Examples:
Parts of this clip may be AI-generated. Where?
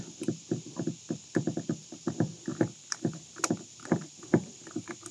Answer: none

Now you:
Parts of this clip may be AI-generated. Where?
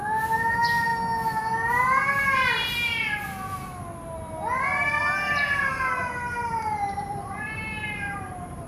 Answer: 0.0-0.9 (vocoder, BigVGAN v2); 1.7-3.7; 6.3-8.7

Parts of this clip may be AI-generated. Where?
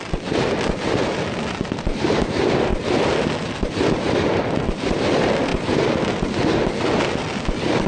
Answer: 0.0-5.5 (vocoder, BigVGAN v2); 6.9-7.9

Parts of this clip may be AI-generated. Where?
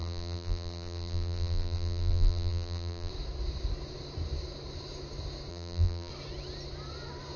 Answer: 0.0-3.1 (vocoder, BigVGAN v2); 5.5-6.1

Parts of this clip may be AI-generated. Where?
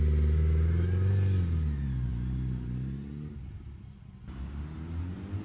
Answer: none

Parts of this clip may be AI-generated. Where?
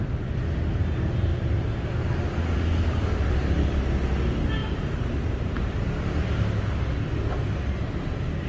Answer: 1.3-1.9 (vocoder, BigVGAN v2)